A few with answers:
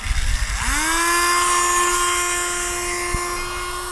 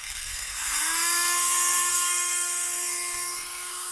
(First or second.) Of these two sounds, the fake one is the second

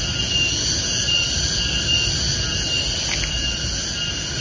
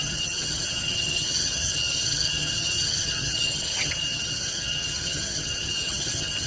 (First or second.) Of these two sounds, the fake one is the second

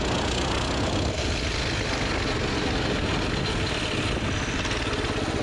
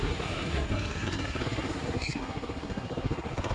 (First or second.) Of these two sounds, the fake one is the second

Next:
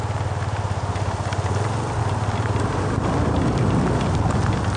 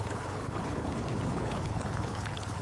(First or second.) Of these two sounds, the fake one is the second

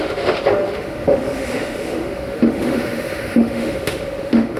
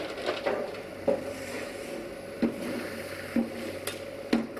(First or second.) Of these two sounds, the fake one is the first